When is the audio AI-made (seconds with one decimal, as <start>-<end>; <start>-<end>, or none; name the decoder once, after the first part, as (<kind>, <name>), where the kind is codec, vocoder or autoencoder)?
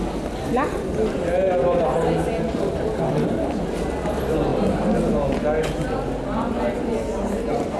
none